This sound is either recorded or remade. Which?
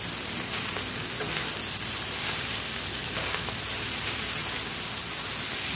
recorded